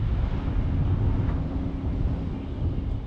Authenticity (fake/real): real